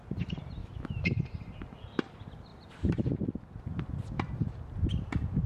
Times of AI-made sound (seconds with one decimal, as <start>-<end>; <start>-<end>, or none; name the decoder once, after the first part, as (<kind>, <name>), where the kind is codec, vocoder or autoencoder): 0.6-1.1 (autoencoder, DAC-VAE)